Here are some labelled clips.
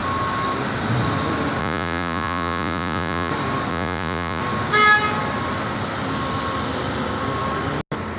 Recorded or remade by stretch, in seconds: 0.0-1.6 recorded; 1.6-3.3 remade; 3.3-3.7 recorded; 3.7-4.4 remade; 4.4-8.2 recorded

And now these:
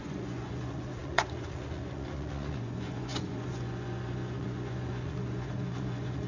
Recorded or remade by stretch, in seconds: 0.0-6.3 remade

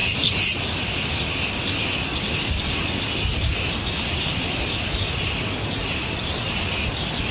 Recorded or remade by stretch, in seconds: 0.0-7.3 recorded

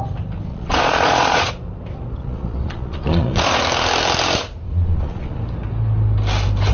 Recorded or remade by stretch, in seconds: 0.0-0.5 recorded; 0.5-1.5 remade; 1.5-2.2 recorded; 2.2-3.6 remade; 3.6-4.7 recorded; 4.7-5.4 remade; 5.4-6.7 recorded